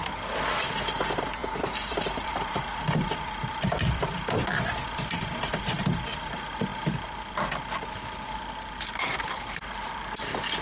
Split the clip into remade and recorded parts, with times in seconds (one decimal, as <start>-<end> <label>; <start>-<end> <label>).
0.0-1.4 recorded; 1.4-5.5 remade; 5.5-10.6 recorded